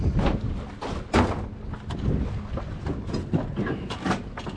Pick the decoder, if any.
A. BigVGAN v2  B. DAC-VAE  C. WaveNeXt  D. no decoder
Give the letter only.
D